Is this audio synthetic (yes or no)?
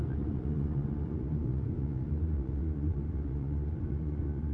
yes